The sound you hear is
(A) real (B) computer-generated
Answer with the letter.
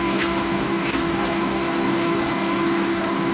B